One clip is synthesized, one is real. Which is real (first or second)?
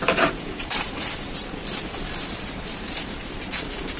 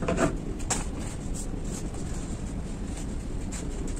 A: second